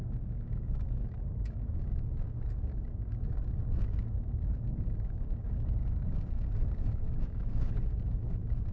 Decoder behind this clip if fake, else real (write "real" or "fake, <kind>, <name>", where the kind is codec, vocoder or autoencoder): fake, codec, DAC